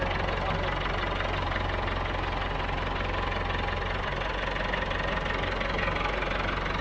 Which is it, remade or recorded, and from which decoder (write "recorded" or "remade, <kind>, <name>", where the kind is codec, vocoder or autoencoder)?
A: recorded